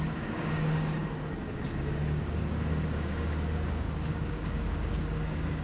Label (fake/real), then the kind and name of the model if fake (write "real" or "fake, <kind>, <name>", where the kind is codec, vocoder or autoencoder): fake, codec, DAC